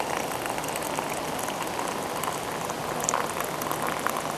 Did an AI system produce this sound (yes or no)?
no